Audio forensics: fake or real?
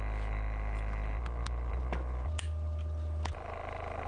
real